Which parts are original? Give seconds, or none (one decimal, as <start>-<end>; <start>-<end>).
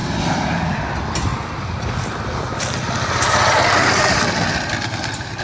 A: 0.8-5.4